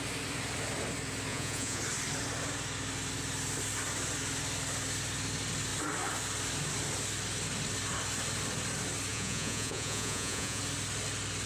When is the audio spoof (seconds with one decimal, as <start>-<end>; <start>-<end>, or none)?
1.3-1.8; 9.1-10.6